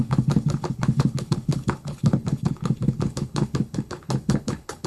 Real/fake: fake